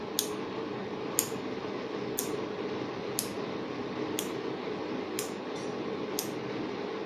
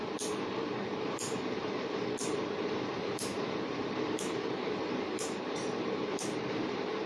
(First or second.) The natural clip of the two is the first